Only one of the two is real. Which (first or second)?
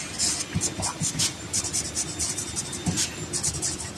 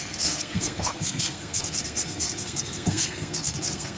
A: first